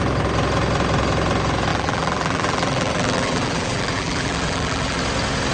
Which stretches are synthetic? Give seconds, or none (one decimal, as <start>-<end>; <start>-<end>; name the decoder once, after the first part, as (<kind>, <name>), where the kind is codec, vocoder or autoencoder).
1.7-5.0 (vocoder, BigVGAN v2)